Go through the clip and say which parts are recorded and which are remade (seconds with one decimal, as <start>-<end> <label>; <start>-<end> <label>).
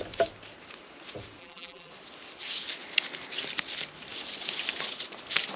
0.0-1.4 recorded; 1.4-1.9 remade; 1.9-5.6 recorded